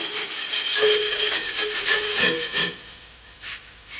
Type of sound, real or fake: real